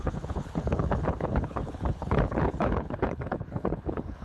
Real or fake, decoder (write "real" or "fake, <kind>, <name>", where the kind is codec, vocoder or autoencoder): fake, codec, HILCodec